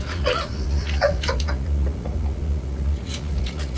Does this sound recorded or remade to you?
remade